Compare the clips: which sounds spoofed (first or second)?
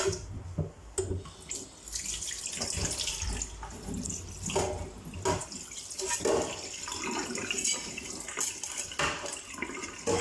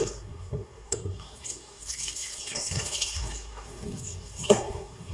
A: second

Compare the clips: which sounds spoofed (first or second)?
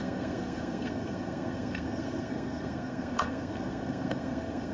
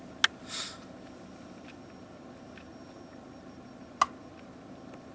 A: first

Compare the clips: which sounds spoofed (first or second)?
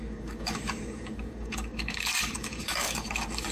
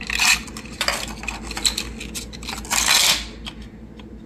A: first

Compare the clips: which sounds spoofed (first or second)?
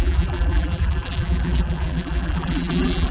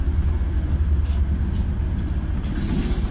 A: first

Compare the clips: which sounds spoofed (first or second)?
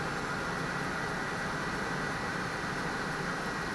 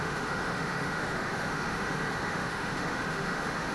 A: second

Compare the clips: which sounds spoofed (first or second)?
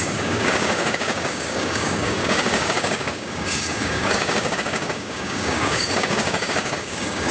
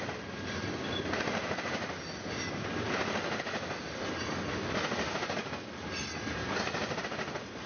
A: first